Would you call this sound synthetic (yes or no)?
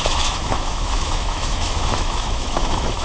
yes